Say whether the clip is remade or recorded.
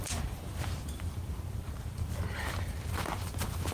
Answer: remade